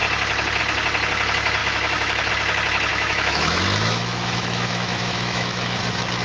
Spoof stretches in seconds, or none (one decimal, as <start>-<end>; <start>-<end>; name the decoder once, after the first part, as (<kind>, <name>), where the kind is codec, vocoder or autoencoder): 1.6-2.3 (autoencoder, DAC-VAE); 2.9-5.8